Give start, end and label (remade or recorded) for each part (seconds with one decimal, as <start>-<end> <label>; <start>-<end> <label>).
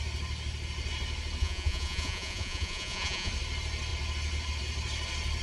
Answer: 0.0-1.4 recorded; 1.4-3.3 remade; 3.3-5.4 recorded